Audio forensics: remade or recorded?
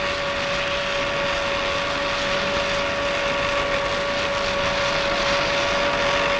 recorded